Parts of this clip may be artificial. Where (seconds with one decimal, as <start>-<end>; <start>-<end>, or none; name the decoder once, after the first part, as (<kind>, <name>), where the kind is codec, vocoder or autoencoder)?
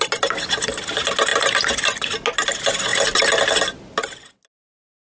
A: none